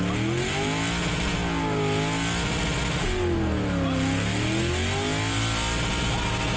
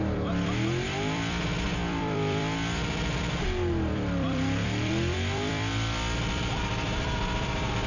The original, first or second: first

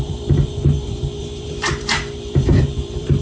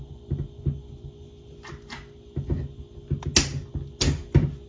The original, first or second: second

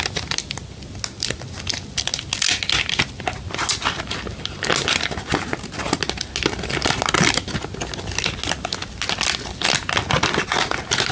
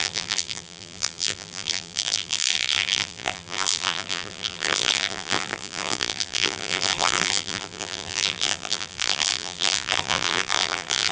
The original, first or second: first